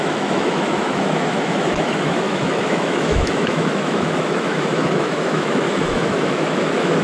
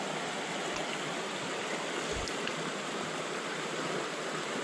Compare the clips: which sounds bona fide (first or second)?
second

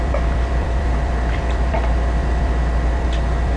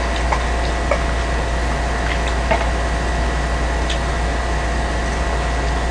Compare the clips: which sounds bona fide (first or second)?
second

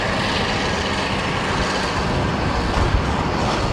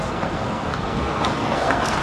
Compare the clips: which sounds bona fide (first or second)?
first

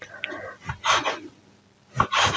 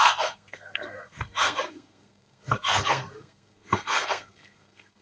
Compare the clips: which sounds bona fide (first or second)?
first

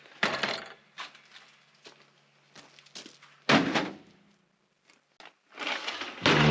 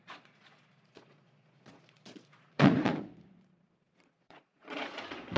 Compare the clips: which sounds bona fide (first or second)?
first